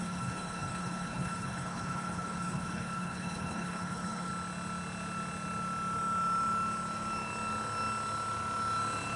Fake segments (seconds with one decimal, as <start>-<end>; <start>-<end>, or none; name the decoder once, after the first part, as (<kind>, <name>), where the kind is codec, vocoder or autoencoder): 0.0-4.3 (codec, HILCodec)